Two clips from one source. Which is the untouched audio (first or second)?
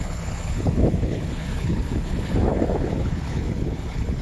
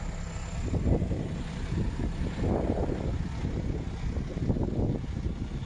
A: second